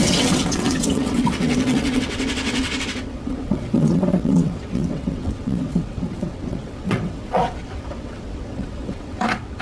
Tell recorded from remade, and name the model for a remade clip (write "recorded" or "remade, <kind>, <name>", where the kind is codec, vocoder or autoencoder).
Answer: remade, vocoder, WaveNeXt